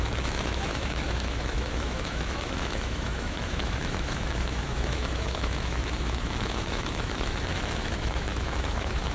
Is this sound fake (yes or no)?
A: yes